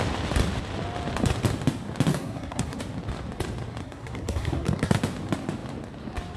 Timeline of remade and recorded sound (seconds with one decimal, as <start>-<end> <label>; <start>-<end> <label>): 0.0-2.1 recorded; 2.1-2.8 remade; 2.8-3.8 recorded; 3.8-5.0 remade; 5.0-6.4 recorded